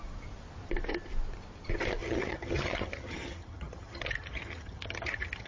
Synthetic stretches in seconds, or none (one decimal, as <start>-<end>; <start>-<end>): 2.0-5.5